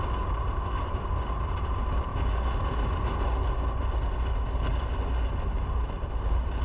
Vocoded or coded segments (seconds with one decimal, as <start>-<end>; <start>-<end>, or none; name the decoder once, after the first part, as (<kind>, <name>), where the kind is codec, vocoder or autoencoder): 0.0-2.1 (vocoder, BigVGAN v2); 6.1-6.6